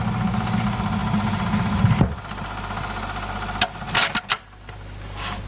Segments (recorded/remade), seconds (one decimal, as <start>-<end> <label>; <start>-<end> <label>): 0.0-5.5 recorded